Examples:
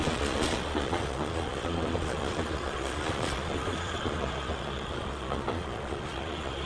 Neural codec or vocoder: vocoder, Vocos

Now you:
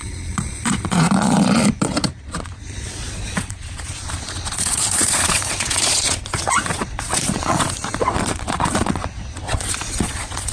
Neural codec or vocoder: vocoder, Vocos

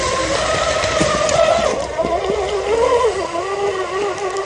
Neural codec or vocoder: none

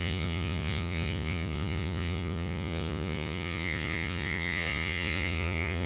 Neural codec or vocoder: vocoder, Vocos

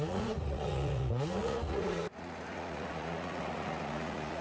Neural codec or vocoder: vocoder, Vocos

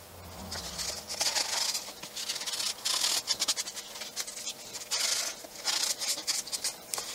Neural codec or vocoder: none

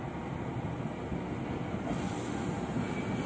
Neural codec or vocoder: none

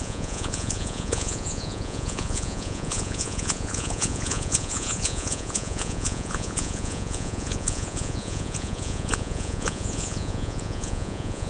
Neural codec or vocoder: vocoder, Vocos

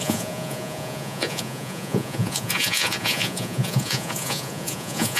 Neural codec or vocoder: vocoder, Vocos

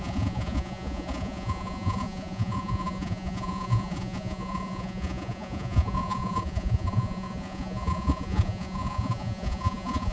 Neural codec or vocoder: vocoder, Vocos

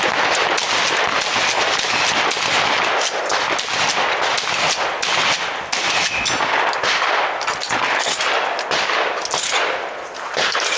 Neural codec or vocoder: none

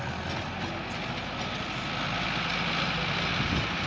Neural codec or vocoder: none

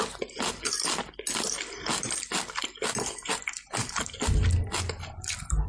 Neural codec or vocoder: none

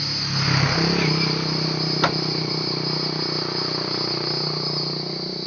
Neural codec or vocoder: none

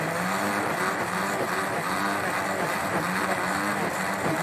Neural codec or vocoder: none